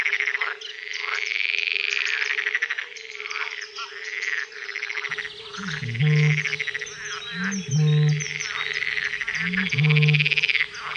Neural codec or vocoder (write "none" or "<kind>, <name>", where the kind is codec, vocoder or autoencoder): none